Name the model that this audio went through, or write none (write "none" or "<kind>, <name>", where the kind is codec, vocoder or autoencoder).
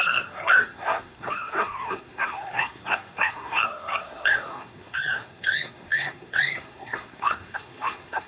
codec, SNAC